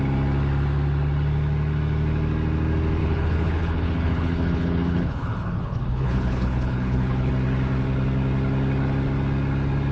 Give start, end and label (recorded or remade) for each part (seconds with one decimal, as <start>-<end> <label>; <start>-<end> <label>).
0.0-3.0 recorded; 3.0-7.3 remade; 7.3-9.9 recorded